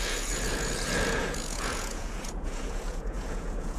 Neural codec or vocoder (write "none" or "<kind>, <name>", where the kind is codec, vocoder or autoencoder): vocoder, Vocos